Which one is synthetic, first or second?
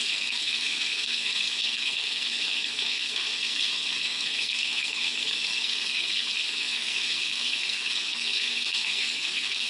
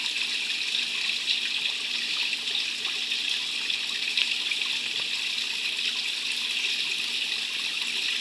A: first